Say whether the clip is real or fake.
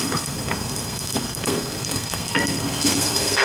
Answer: fake